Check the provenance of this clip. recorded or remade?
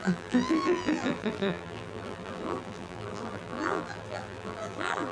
remade